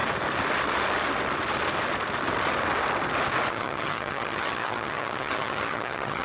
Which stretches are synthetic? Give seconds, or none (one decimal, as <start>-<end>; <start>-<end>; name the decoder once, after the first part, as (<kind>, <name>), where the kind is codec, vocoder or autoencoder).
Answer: 3.5-6.2 (vocoder, HiFi-GAN)